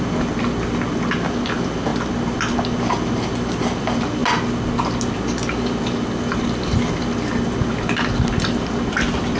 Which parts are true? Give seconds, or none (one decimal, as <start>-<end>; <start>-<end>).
0.0-9.4